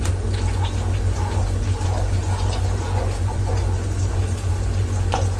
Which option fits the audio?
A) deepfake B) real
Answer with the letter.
A